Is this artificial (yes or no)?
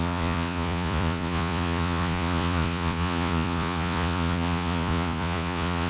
yes